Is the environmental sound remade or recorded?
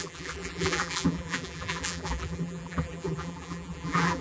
remade